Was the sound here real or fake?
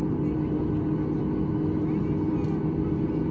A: real